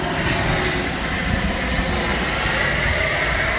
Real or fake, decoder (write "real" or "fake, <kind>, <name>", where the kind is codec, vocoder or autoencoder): real